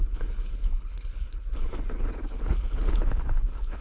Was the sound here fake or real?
fake